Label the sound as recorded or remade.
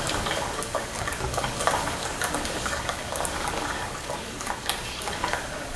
remade